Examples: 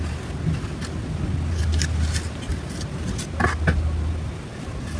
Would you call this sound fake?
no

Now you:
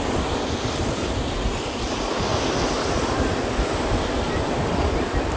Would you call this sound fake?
no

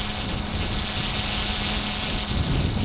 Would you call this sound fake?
no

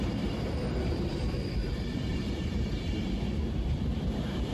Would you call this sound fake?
yes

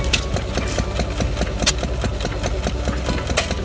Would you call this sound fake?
no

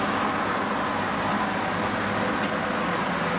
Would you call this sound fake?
no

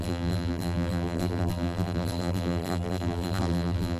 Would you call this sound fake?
yes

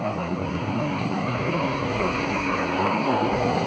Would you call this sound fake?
yes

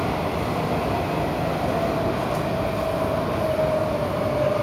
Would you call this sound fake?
no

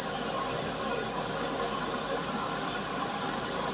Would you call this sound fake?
no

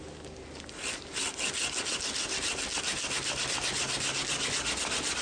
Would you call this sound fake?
no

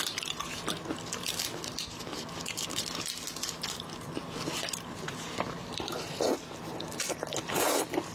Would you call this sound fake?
yes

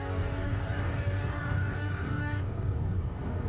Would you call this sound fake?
yes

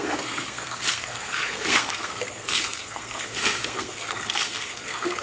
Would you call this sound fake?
yes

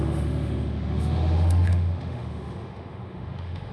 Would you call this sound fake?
yes